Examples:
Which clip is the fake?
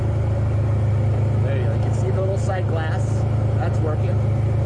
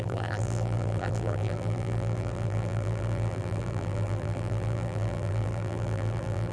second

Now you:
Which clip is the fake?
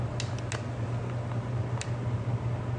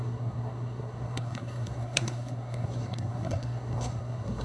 second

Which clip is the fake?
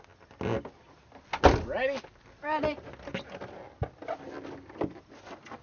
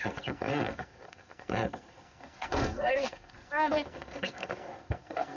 second